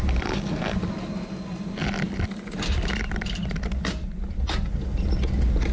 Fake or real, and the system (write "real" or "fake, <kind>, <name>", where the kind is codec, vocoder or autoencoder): real